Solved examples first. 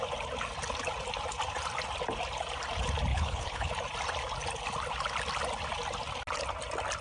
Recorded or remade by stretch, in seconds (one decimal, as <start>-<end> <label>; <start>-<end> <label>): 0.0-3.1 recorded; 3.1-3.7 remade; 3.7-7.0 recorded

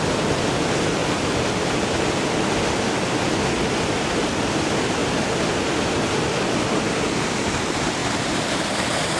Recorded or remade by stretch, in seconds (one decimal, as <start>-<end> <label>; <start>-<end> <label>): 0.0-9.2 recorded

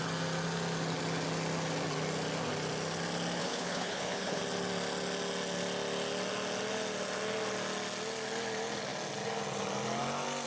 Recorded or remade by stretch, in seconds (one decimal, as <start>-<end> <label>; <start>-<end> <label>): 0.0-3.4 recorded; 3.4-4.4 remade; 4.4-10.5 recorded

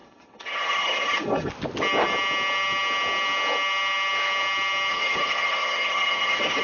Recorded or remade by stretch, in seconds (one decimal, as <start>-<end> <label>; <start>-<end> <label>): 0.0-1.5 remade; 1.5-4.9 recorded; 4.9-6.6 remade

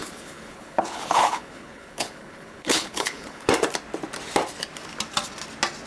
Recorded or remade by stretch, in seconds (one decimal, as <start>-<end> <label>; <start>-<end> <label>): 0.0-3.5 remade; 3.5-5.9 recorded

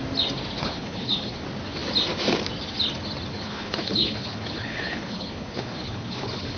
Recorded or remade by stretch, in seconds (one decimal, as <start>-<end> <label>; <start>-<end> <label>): 0.0-0.6 recorded; 0.6-1.4 remade; 1.4-3.3 recorded; 3.3-6.6 remade

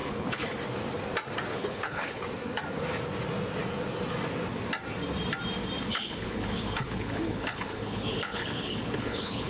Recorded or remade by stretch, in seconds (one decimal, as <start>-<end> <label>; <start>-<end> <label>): 0.0-0.6 remade; 0.6-1.5 recorded; 1.5-2.2 remade; 2.2-5.9 recorded; 5.9-9.5 remade

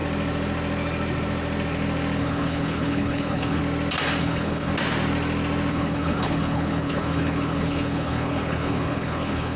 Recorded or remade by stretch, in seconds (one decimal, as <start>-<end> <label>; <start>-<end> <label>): 0.0-2.2 recorded; 2.2-3.6 remade; 3.6-4.2 recorded; 4.2-4.7 remade; 4.7-5.7 recorded; 5.7-9.6 remade